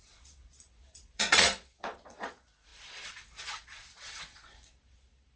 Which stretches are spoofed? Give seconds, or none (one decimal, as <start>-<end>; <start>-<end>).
0.0-5.4